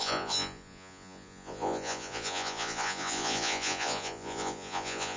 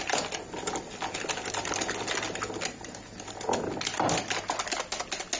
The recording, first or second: second